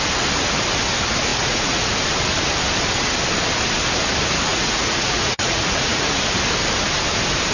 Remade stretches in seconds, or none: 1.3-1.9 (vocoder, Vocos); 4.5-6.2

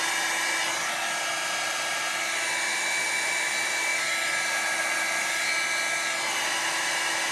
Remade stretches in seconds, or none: none

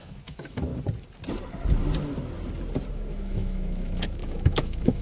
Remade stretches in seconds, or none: 0.0-0.7 (autoencoder, DAC-VAE); 2.9-5.0

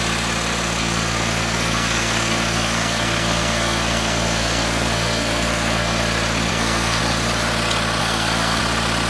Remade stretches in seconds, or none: 0.8-6.0 (codec, SNAC); 6.5-7.0; 8.0-8.6

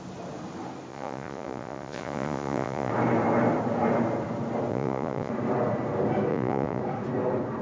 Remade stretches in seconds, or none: 0.9-2.9 (vocoder, Vocos); 4.7-5.3; 6.3-6.8

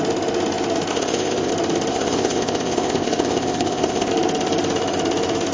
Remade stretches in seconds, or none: 0.9-1.5 (codec, ZipCodec); 1.9-4.1